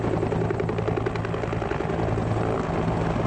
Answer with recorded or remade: recorded